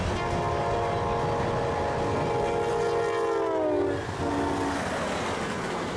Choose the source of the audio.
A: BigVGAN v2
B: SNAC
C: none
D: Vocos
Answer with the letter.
C